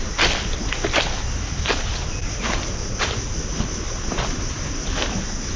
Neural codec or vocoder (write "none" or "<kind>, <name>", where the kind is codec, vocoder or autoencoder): none